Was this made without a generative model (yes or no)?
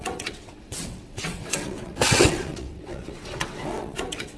no